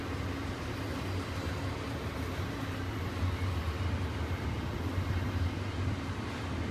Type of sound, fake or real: real